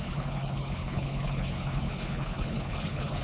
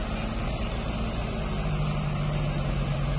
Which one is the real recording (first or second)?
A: second